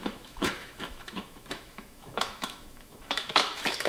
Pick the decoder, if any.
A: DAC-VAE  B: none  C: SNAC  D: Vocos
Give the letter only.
A